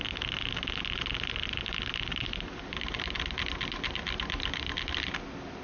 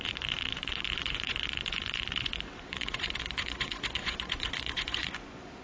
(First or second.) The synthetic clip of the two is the second